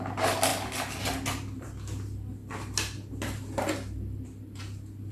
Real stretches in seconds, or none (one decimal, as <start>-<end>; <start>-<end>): 0.0-5.1